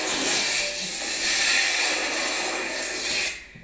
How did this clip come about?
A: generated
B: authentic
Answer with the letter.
B